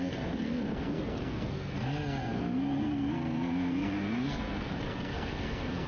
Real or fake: fake